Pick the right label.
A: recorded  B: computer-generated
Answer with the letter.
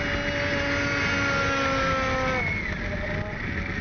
A